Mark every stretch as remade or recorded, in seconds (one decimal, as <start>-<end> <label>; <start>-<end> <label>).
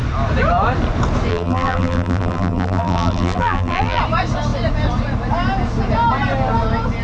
0.0-1.3 recorded; 1.3-4.0 remade; 4.0-7.0 recorded